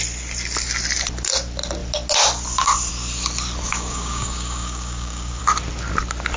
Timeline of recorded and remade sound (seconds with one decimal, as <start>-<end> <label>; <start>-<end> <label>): 0.0-3.7 recorded; 3.7-5.4 remade; 5.4-6.4 recorded